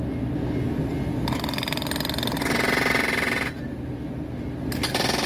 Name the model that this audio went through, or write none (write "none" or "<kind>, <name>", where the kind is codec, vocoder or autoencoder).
none